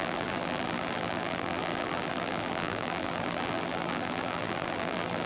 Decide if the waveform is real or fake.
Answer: fake